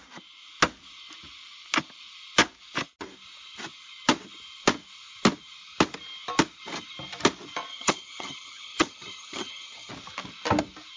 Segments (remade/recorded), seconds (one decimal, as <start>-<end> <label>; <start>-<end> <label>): 0.0-7.7 recorded; 7.7-9.9 remade; 9.9-11.0 recorded